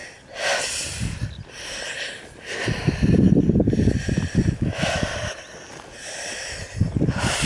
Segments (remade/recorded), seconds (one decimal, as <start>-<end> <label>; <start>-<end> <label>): 0.0-4.5 recorded; 4.5-5.1 remade; 5.1-7.5 recorded